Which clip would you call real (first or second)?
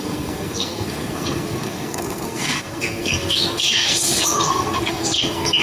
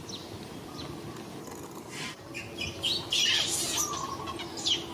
second